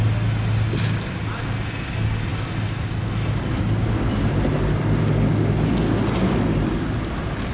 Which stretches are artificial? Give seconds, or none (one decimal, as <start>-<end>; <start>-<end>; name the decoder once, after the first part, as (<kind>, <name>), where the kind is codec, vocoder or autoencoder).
none